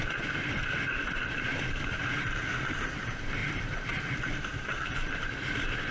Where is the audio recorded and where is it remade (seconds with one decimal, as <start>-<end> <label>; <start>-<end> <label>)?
0.0-3.4 recorded; 3.4-4.1 remade; 4.1-4.5 recorded; 4.5-5.9 remade